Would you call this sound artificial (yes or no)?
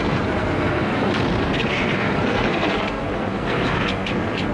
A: yes